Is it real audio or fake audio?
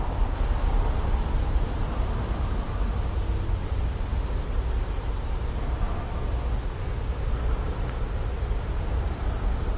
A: real